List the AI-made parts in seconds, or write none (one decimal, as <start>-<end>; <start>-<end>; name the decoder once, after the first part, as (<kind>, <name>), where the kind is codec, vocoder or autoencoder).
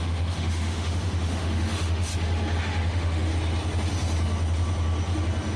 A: 0.0-2.1 (autoencoder, DAC-VAE); 2.6-3.3